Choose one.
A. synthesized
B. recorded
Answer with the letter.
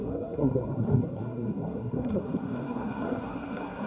A